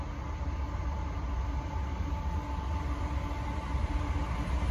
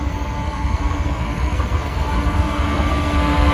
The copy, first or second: second